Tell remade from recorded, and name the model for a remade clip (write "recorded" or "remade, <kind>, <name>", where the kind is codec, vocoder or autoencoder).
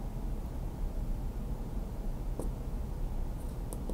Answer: recorded